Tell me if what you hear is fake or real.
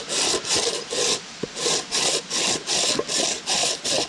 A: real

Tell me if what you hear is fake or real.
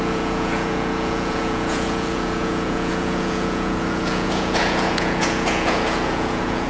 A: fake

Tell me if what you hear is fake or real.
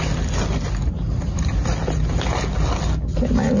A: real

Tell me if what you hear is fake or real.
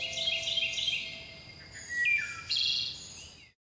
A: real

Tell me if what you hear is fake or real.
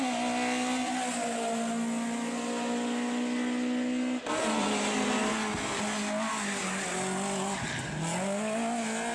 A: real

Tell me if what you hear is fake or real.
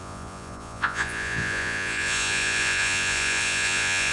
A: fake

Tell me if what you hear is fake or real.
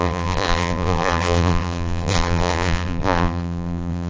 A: fake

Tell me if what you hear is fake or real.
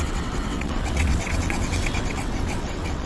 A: fake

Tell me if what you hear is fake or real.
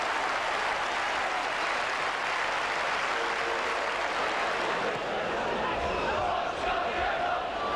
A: real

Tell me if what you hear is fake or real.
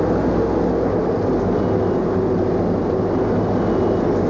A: real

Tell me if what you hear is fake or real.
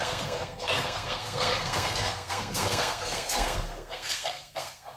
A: fake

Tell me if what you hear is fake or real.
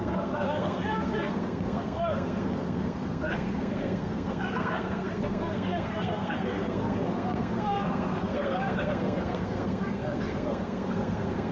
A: fake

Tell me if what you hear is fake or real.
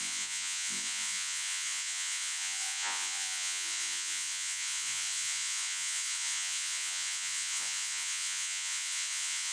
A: fake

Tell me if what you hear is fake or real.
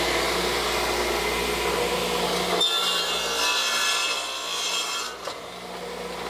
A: real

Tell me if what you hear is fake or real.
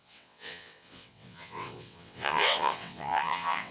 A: fake